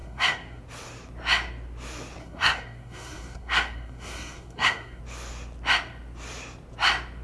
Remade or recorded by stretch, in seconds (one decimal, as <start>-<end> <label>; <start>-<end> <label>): 0.0-0.6 remade; 0.6-2.2 recorded; 2.2-5.0 remade; 5.0-7.2 recorded